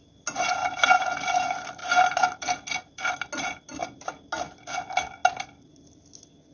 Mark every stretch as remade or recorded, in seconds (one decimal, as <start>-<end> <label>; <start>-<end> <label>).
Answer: 0.0-0.6 recorded; 0.6-1.1 remade; 1.1-1.8 recorded; 1.8-2.4 remade; 2.4-6.5 recorded